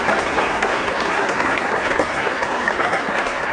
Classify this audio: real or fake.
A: fake